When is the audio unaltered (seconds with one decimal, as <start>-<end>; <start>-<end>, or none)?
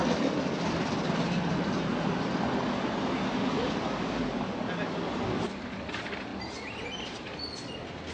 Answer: 0.0-8.1